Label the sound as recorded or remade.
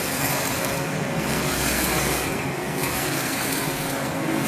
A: remade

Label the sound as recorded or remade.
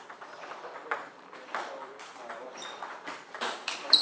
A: remade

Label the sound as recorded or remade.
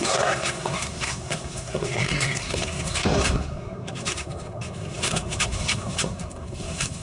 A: remade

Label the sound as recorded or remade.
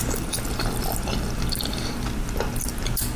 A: recorded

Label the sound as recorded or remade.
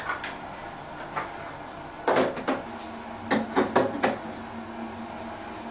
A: recorded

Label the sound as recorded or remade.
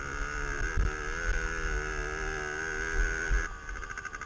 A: recorded